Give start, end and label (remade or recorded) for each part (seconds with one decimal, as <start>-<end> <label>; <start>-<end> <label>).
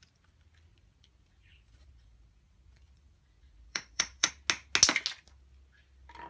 0.0-0.7 recorded; 0.7-4.3 remade; 4.3-6.3 recorded